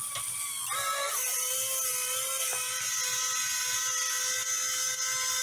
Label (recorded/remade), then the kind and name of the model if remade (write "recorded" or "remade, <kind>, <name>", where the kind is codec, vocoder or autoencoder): recorded